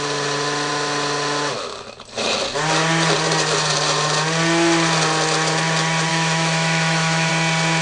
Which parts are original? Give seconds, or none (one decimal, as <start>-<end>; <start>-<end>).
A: 0.0-6.1; 7.3-7.8